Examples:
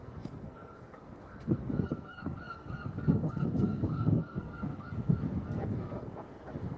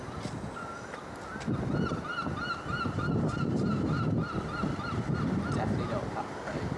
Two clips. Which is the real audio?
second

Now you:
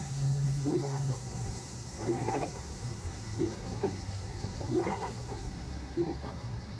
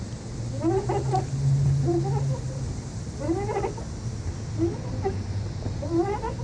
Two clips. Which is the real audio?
second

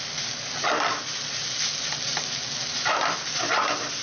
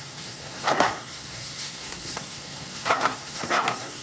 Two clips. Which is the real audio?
first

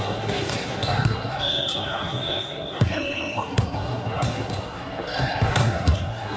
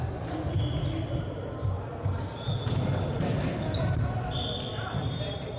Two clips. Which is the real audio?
second